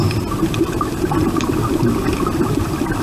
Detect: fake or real real